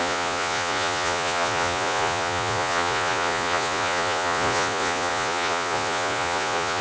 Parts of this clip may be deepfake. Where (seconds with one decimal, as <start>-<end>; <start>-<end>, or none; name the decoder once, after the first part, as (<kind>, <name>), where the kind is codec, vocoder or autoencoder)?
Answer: 0.0-6.8 (vocoder, Vocos)